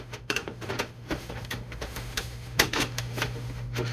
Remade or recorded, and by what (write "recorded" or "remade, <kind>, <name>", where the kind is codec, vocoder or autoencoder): remade, autoencoder, DAC-VAE